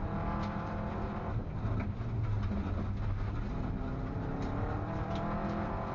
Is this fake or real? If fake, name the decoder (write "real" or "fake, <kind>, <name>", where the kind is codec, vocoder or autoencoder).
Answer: real